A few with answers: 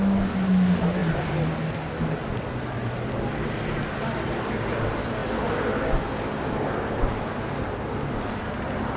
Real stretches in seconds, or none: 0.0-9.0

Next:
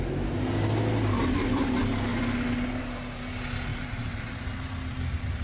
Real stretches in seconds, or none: 0.0-3.7; 4.2-5.4

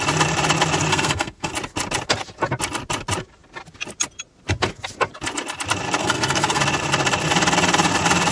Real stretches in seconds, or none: 0.0-0.9; 1.5-6.0; 6.6-8.3

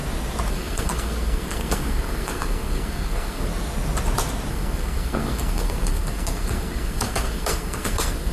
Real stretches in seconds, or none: 0.0-0.5; 3.5-4.5

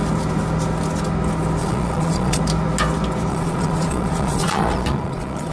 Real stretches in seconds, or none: 0.0-1.6; 2.4-3.3

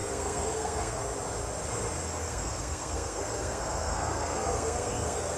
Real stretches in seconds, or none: 1.0-2.2